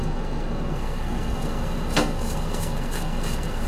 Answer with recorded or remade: remade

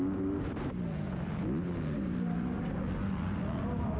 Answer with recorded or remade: recorded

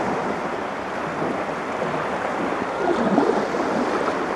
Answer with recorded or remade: recorded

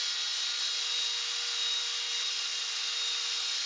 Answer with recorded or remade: recorded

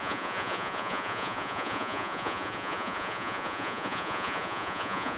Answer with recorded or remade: remade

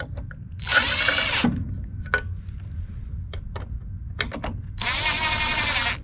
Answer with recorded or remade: recorded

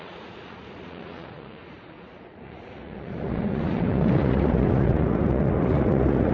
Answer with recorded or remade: remade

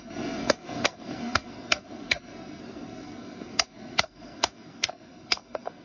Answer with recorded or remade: remade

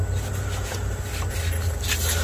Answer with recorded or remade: recorded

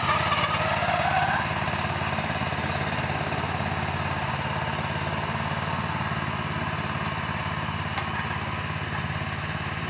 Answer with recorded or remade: recorded